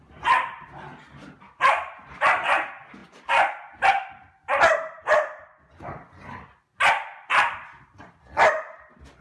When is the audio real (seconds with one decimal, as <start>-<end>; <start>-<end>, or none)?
0.0-9.2